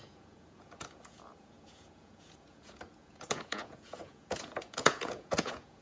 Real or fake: fake